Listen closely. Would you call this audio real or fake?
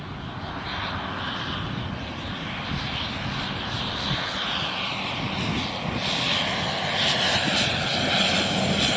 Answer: real